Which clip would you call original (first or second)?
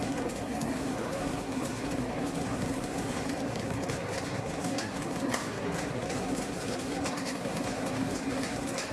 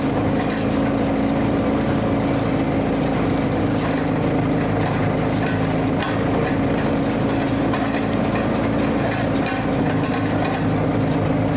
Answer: second